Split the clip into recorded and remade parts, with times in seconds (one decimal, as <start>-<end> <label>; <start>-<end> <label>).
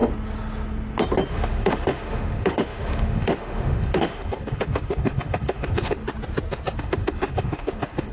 0.0-1.3 recorded; 1.3-6.0 remade; 6.0-6.8 recorded; 6.8-8.1 remade